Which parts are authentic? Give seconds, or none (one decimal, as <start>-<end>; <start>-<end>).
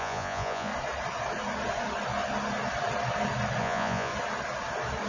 0.7-3.6; 4.1-5.1